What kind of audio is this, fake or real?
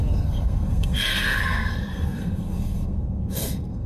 fake